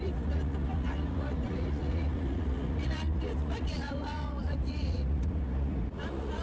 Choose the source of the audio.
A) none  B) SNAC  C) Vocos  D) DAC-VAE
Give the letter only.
C